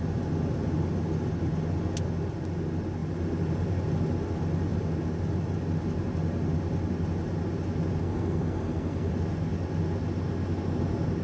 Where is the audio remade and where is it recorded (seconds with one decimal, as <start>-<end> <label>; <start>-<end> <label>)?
0.0-8.0 recorded; 8.0-9.1 remade; 9.1-11.2 recorded